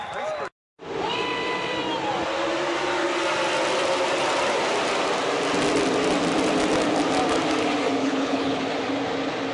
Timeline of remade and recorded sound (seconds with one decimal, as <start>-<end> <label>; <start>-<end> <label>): 0.0-8.0 recorded; 8.0-8.6 remade; 8.6-9.5 recorded